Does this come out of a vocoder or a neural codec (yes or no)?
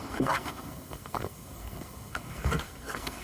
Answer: yes